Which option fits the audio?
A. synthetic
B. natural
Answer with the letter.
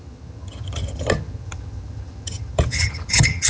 A